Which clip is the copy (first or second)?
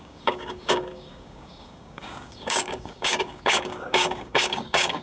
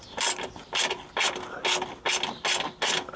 first